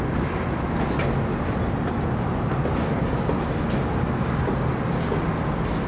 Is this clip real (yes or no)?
yes